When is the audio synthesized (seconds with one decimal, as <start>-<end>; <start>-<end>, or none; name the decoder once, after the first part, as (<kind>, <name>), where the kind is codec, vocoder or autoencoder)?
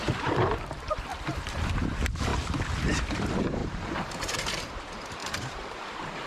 0.0-2.3 (vocoder, BigVGAN v2); 2.8-6.3